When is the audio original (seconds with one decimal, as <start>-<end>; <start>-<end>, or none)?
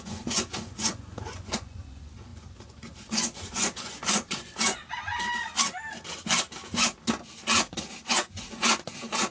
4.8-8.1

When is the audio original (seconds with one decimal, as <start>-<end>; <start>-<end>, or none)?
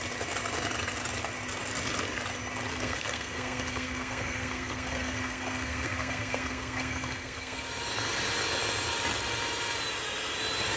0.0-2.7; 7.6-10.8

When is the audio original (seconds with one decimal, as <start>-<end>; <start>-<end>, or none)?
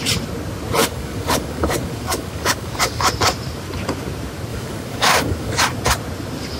0.0-0.8; 3.1-4.5; 5.6-6.6